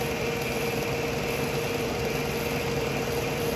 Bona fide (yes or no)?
yes